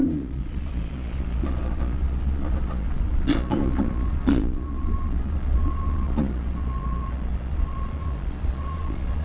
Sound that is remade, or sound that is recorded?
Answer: remade